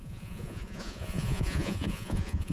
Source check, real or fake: fake